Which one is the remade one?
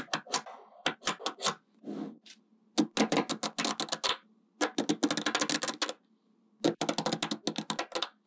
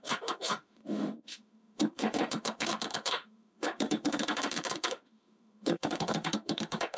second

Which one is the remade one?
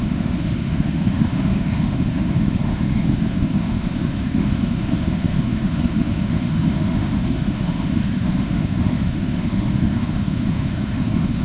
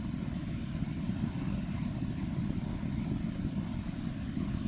first